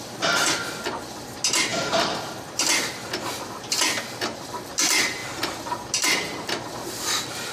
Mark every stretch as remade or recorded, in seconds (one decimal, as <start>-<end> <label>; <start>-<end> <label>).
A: 0.0-7.5 recorded

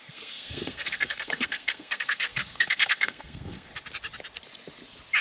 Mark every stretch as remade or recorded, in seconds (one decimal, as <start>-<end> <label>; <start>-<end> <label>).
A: 0.0-3.7 remade; 3.7-5.2 recorded

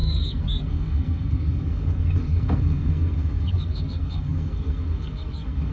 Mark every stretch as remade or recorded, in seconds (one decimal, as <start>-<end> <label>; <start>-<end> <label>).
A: 0.0-5.7 remade

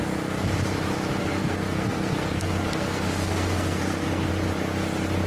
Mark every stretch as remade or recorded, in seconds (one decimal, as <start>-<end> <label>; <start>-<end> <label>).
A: 0.0-1.2 recorded; 1.2-4.3 remade; 4.3-5.3 recorded